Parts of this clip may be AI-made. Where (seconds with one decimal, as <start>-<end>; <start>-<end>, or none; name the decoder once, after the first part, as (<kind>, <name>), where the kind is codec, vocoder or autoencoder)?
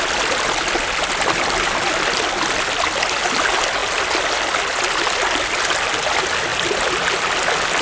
none